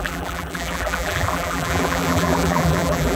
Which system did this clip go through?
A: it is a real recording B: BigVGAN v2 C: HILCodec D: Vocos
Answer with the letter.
B